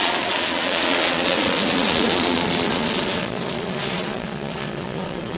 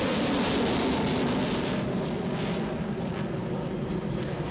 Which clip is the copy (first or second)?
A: first